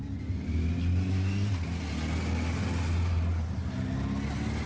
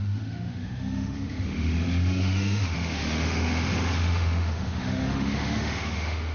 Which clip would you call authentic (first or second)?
first